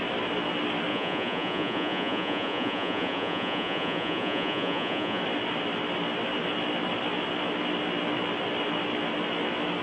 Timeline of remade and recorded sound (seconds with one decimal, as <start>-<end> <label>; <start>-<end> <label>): 0.0-0.9 recorded; 0.9-5.2 remade; 5.2-9.8 recorded